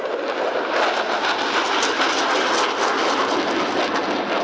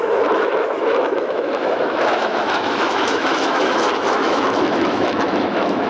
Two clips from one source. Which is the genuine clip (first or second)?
first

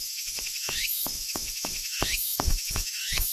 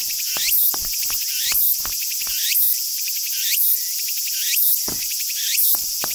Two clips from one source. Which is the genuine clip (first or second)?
second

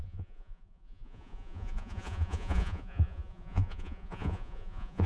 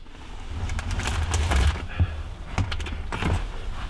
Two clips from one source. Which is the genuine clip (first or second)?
second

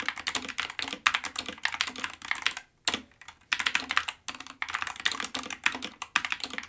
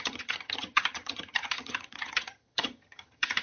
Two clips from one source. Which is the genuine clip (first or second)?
first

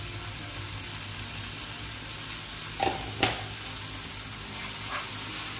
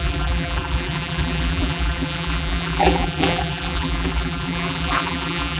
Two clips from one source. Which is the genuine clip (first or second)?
first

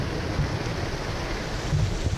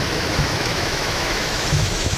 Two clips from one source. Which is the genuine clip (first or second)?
first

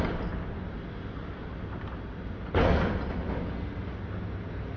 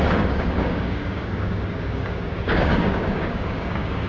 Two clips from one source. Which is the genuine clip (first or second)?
first